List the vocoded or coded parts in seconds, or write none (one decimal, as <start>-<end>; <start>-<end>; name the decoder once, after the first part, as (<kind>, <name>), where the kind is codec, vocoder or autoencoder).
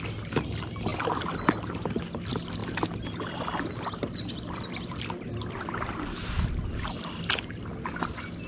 none